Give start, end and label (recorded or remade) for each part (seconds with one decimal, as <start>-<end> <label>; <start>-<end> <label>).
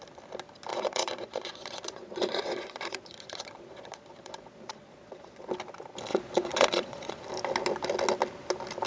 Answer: 0.0-0.7 recorded; 0.7-5.5 remade; 5.5-6.1 recorded; 6.1-7.2 remade; 7.2-8.9 recorded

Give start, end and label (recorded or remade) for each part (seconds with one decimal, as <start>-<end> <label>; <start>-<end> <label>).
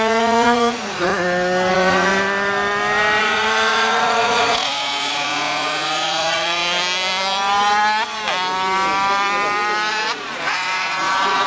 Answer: 0.0-1.1 remade; 1.1-1.7 recorded; 1.7-2.1 remade; 2.1-3.2 recorded; 3.2-6.6 remade; 6.6-9.9 recorded; 9.9-11.5 remade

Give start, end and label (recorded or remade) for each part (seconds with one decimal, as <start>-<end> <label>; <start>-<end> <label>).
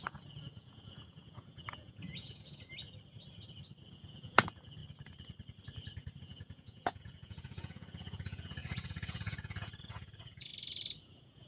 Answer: 0.0-2.7 remade; 2.7-3.9 recorded; 3.9-4.8 remade; 4.8-6.2 recorded; 6.2-10.5 remade; 10.5-11.0 recorded; 11.0-11.5 remade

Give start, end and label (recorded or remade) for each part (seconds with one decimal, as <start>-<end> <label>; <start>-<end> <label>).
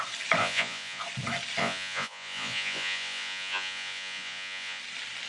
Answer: 0.0-0.4 recorded; 0.4-1.0 remade; 1.0-1.6 recorded; 1.6-4.8 remade; 4.8-5.3 recorded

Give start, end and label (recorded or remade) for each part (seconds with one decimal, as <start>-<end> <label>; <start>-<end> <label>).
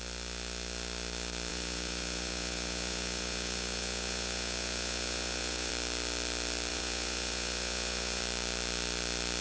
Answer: 0.0-1.5 recorded; 1.5-5.7 remade; 5.7-6.7 recorded; 6.7-8.2 remade; 8.2-9.4 recorded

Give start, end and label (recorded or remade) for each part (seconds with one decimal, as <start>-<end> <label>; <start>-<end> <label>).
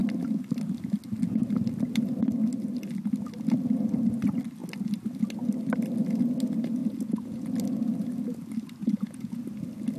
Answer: 0.0-6.8 recorded; 6.8-7.5 remade; 7.5-8.8 recorded; 8.8-9.4 remade; 9.4-10.0 recorded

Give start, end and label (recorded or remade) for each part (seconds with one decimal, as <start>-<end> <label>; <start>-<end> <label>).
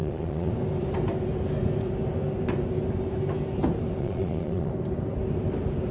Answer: 0.0-0.5 remade; 0.5-4.0 recorded; 4.0-4.7 remade; 4.7-5.9 recorded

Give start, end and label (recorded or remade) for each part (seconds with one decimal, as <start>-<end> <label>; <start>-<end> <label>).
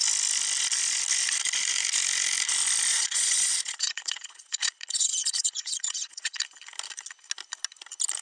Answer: 0.0-2.9 recorded; 2.9-6.4 remade; 6.4-8.2 recorded